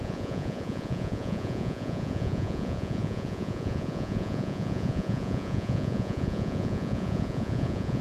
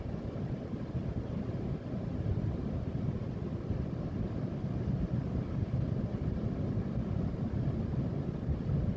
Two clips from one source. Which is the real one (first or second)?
second